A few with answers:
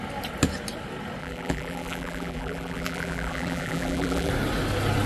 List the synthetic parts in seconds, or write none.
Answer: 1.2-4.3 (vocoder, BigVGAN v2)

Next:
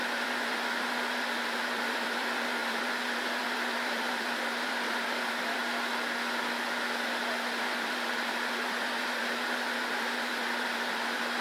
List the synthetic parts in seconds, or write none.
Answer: 0.0-5.6 (vocoder, BigVGAN v2); 7.6-11.4

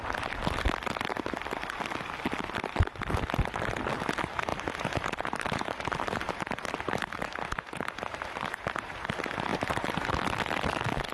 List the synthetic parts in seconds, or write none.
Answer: 4.5-9.0 (vocoder, BigVGAN v2); 9.5-10.1

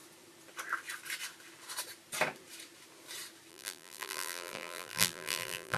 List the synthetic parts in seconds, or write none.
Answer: 3.5-5.8 (vocoder, BigVGAN v2)

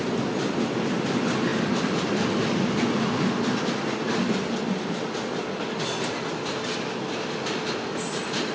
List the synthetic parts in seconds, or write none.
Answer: 1.5-2.1 (vocoder, BigVGAN v2)

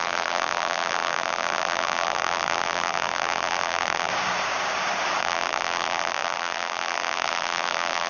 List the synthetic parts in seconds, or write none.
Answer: 0.0-4.1 (vocoder, BigVGAN v2); 5.2-8.1

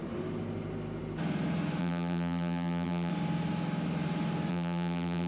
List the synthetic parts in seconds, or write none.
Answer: 1.8-3.1 (vocoder, BigVGAN v2); 4.5-5.3